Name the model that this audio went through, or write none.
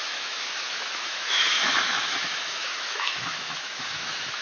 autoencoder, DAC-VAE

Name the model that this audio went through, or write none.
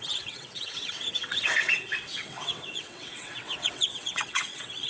vocoder, WaveNeXt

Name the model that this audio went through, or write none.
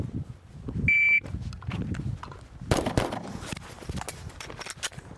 none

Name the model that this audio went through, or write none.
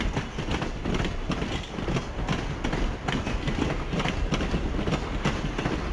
none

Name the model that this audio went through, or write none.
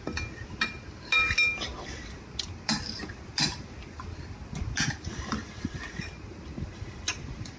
none